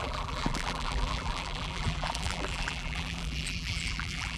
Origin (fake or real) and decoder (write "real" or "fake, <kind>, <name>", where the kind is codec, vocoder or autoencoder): fake, vocoder, BigVGAN v2